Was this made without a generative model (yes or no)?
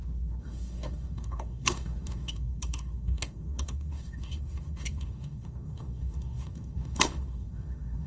no